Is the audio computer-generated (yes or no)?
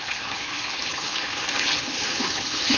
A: yes